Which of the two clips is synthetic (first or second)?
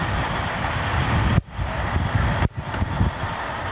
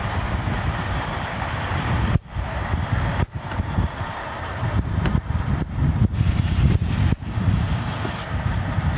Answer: second